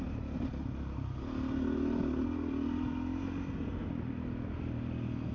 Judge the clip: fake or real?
real